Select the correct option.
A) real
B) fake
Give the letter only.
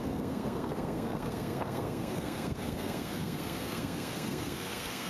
B